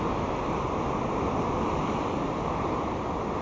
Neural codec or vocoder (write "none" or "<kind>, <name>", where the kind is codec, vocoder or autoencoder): none